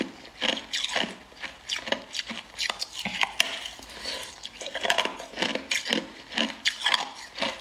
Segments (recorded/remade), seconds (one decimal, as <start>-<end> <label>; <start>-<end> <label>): 0.0-7.6 recorded